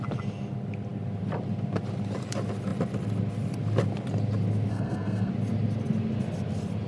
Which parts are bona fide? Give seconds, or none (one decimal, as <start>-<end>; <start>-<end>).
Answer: 0.0-4.7; 5.3-6.9

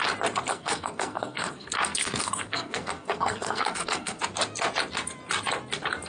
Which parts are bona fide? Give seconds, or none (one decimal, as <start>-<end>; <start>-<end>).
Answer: 0.0-0.5; 4.2-6.1

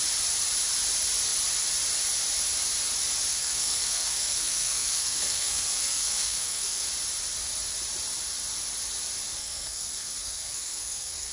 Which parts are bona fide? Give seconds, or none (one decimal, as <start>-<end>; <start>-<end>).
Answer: 0.0-3.3; 6.9-9.4

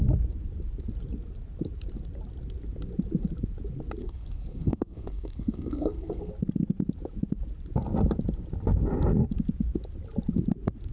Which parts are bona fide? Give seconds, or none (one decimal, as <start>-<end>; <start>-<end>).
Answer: 0.0-4.0; 6.3-10.9

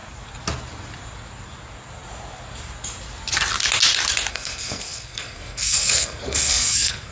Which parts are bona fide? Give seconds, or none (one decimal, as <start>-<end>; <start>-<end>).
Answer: 0.0-4.3

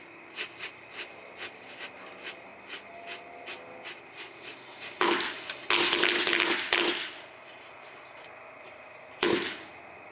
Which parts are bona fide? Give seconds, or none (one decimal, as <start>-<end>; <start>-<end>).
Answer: 0.0-10.1